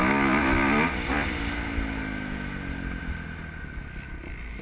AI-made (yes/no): no